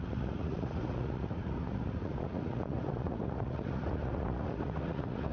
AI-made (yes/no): yes